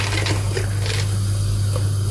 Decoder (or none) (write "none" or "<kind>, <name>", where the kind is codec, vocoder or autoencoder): none